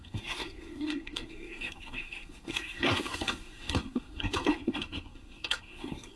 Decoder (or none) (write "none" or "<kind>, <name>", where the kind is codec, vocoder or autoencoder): codec, SNAC